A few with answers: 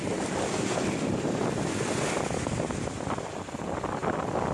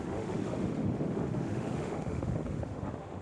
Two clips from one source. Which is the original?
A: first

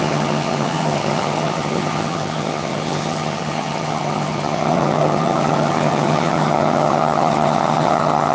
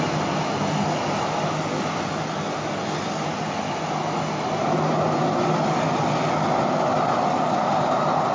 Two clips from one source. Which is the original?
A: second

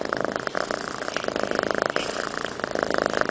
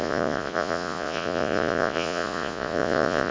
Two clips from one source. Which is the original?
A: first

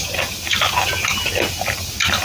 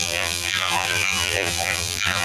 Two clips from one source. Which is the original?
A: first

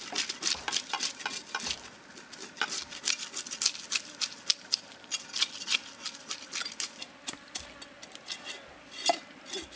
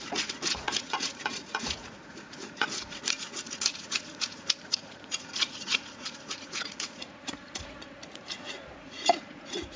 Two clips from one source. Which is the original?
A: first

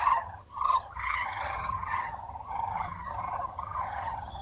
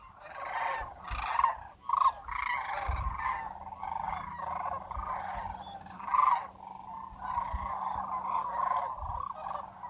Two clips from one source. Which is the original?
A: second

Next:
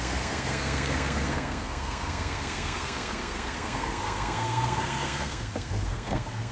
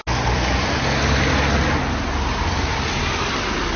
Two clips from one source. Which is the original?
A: second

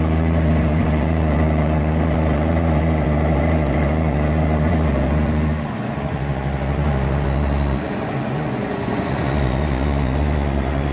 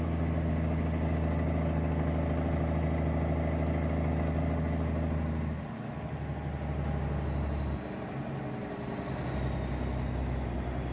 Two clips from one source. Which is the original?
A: second